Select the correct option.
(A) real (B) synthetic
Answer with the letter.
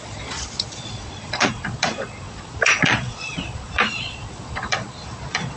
B